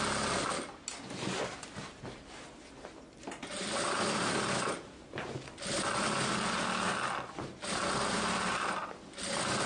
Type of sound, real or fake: real